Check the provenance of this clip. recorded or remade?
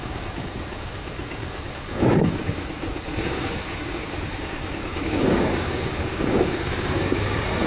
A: remade